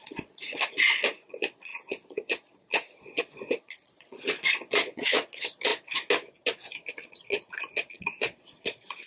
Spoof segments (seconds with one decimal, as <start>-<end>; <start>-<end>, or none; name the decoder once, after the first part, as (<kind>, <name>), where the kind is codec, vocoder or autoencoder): 0.0-5.7 (vocoder, Vocos); 6.9-9.1